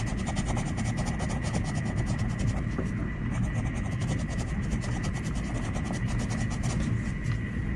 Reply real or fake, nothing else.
real